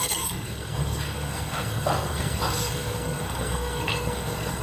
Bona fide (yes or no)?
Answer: no